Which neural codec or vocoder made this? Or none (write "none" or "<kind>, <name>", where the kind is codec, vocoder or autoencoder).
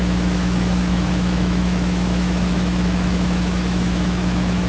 autoencoder, DAC-VAE